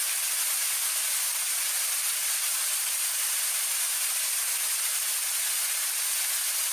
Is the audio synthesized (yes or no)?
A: no